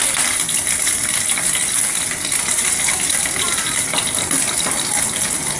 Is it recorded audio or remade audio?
recorded